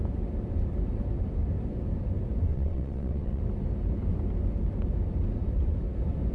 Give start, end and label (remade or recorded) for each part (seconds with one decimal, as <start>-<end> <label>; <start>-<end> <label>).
0.0-2.5 recorded; 2.5-3.4 remade; 3.4-6.3 recorded